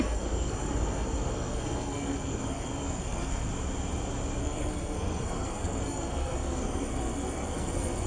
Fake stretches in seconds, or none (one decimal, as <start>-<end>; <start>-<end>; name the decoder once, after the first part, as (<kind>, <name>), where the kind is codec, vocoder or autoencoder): 0.0-3.5 (codec, SNAC); 4.4-8.1